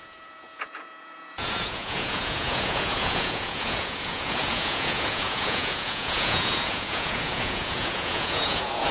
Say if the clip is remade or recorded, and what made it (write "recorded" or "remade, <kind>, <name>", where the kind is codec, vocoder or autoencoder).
remade, vocoder, Vocos